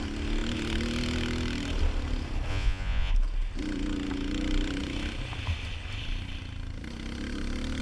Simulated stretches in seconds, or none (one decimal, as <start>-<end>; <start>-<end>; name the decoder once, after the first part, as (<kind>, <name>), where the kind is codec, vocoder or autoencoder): 2.5-3.1 (vocoder, Vocos)